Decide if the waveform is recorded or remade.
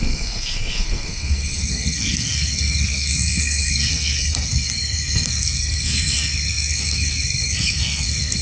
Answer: remade